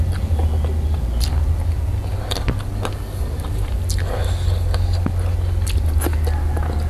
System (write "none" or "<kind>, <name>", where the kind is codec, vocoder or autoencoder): none